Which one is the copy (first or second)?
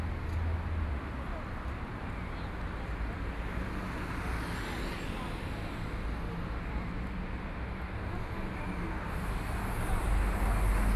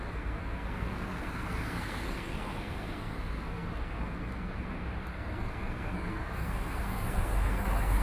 second